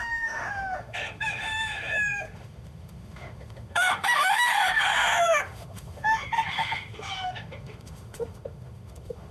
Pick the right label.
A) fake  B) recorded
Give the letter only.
A